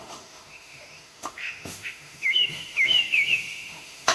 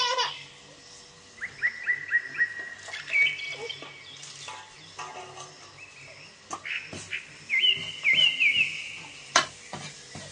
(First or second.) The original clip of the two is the second